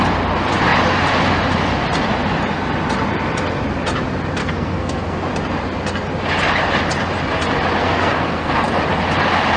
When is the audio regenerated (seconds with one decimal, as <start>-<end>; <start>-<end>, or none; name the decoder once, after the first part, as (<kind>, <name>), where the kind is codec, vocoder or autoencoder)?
4.4-5.3 (codec, SNAC); 7.8-8.7